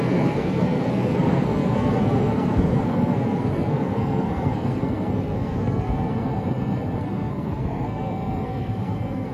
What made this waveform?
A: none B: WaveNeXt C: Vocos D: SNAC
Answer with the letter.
D